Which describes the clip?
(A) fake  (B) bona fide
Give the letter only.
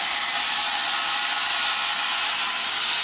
B